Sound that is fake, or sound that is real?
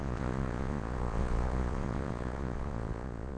fake